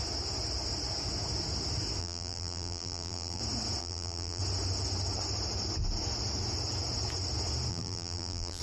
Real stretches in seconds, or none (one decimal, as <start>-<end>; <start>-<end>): 0.0-2.0; 3.4-3.8; 4.4-7.7